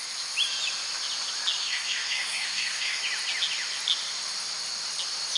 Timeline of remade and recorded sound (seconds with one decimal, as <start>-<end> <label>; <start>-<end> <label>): 0.0-1.6 recorded; 1.6-3.0 remade; 3.0-5.4 recorded